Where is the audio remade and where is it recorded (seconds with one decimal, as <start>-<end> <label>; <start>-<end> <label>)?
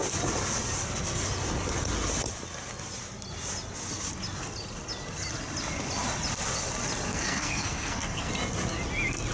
0.0-7.1 recorded; 7.1-8.3 remade; 8.3-9.3 recorded